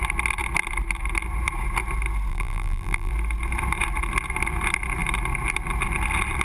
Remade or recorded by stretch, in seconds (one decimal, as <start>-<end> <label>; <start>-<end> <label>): 0.0-2.3 recorded; 2.3-3.1 remade; 3.1-6.4 recorded

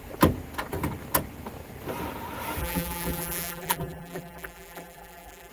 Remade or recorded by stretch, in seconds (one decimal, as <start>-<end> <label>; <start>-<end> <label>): 0.0-2.6 recorded; 2.6-5.5 remade

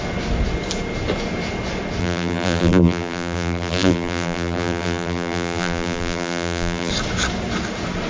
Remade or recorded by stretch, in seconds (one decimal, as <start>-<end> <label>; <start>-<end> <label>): 0.0-2.0 recorded; 2.0-6.9 remade; 6.9-8.1 recorded

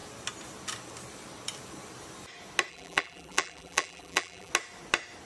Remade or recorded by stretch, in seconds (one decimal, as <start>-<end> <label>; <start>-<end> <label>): 0.0-2.7 recorded; 2.7-4.5 remade; 4.5-5.3 recorded

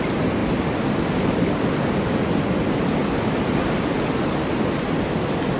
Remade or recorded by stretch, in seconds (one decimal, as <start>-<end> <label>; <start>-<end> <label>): 0.0-3.0 recorded; 3.0-3.6 remade; 3.6-5.6 recorded